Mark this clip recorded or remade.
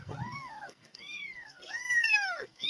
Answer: remade